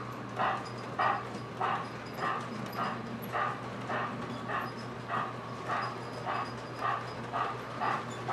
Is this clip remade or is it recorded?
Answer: recorded